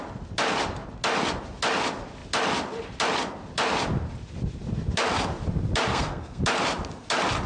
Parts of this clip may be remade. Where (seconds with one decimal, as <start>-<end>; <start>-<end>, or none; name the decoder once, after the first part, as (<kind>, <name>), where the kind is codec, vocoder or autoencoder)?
5.9-6.4 (codec, SNAC)